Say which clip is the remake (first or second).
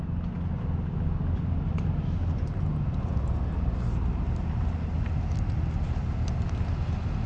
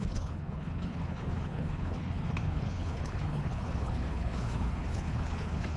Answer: second